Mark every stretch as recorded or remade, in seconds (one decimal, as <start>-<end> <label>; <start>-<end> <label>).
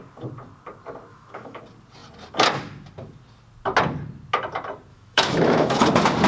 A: 0.0-1.1 recorded; 1.1-1.6 remade; 1.6-4.9 recorded; 4.9-5.8 remade; 5.8-6.3 recorded